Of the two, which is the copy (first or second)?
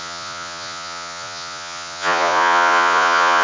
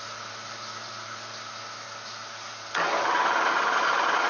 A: first